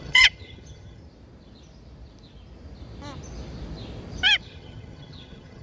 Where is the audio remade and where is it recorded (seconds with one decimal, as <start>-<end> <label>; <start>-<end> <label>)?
0.0-1.0 remade; 1.0-4.4 recorded; 4.4-5.6 remade